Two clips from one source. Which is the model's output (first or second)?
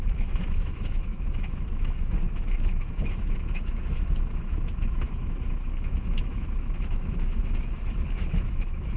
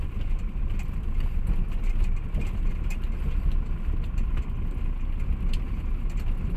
first